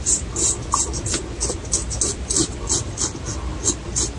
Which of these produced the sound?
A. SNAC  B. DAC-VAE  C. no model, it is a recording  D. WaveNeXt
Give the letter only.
C